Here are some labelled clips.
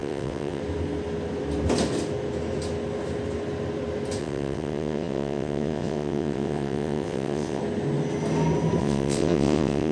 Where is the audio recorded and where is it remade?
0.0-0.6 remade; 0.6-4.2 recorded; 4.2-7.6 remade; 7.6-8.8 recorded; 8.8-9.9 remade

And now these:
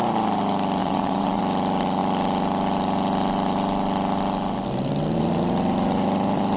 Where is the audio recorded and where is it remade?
0.0-0.8 recorded; 0.8-1.4 remade; 1.4-6.6 recorded

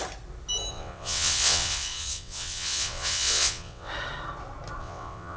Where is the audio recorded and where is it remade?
0.0-0.7 recorded; 0.7-3.9 remade; 3.9-4.8 recorded; 4.8-5.4 remade

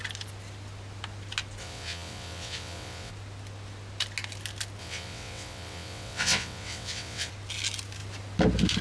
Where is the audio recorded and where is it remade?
0.0-1.6 recorded; 1.6-3.1 remade; 3.1-4.8 recorded; 4.8-7.3 remade; 7.3-8.8 recorded

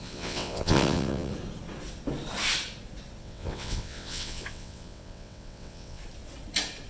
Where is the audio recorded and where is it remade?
0.0-1.3 remade; 1.3-3.2 recorded; 3.2-6.0 remade; 6.0-6.9 recorded

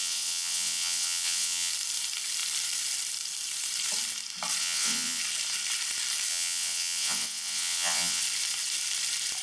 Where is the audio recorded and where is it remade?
0.0-1.7 remade; 1.7-4.6 recorded; 4.6-5.2 remade; 5.2-6.3 recorded; 6.3-8.2 remade; 8.2-9.4 recorded

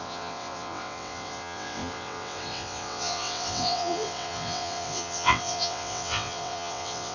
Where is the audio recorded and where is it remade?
0.0-7.1 remade